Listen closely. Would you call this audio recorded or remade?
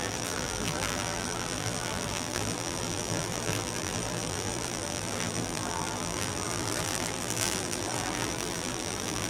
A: remade